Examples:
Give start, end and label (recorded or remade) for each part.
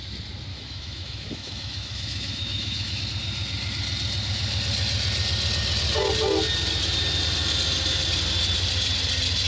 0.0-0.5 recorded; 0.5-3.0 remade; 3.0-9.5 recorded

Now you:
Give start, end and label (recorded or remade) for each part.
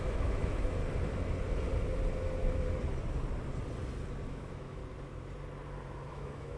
0.0-0.8 remade; 0.8-4.3 recorded; 4.3-4.8 remade; 4.8-6.1 recorded; 6.1-6.6 remade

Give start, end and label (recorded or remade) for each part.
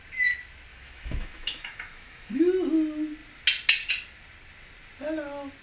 0.0-0.7 recorded; 0.7-2.4 remade; 2.4-5.6 recorded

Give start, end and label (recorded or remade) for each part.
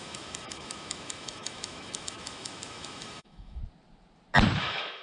0.0-3.6 remade; 3.6-4.6 recorded; 4.6-5.0 remade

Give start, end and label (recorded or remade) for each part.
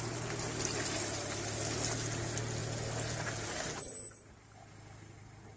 0.0-5.6 recorded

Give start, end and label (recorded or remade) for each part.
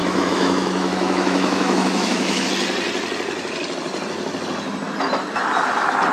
0.0-2.5 remade; 2.5-6.1 recorded